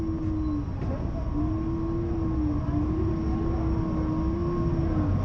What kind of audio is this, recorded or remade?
recorded